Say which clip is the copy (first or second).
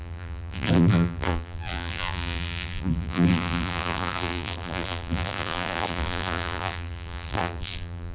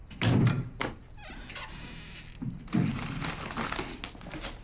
first